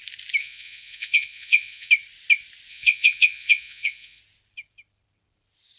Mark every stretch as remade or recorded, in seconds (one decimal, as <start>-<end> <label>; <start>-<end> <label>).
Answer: 0.0-0.4 recorded; 0.4-1.9 remade; 1.9-2.7 recorded; 2.7-4.2 remade; 4.2-5.8 recorded